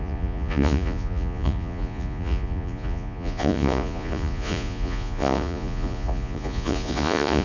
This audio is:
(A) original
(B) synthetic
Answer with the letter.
B